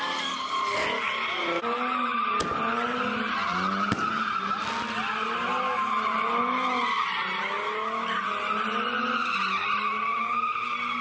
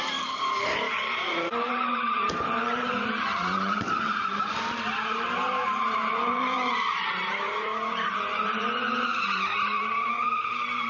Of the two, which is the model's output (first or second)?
second